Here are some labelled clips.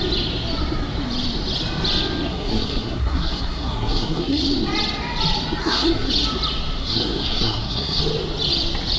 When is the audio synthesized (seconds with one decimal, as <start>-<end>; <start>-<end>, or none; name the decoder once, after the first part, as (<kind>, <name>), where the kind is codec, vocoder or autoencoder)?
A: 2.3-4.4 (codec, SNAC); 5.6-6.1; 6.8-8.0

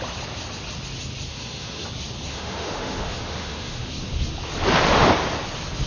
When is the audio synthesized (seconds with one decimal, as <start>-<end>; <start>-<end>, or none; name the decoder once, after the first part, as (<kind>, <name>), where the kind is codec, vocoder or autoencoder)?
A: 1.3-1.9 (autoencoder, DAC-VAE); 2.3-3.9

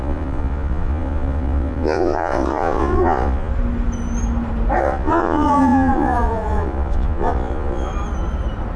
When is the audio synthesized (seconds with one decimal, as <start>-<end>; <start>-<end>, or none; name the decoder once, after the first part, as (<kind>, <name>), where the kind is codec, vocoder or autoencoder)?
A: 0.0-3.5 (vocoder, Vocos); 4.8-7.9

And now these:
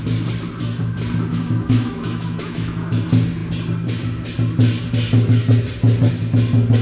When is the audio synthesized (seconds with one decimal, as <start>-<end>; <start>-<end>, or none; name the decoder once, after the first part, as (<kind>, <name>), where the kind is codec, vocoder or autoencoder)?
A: 1.3-3.0 (autoencoder, DAC-VAE)